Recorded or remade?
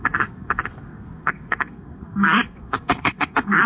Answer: remade